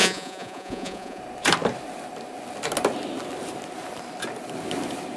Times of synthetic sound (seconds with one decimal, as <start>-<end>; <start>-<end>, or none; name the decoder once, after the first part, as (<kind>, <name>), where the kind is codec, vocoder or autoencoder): 0.0-1.2 (vocoder, Vocos)